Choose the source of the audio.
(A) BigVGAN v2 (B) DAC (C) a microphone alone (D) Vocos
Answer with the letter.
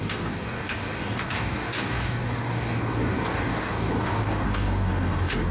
B